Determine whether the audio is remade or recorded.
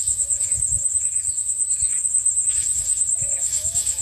remade